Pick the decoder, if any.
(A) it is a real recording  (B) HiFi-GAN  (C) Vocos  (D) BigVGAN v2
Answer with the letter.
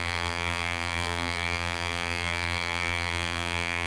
D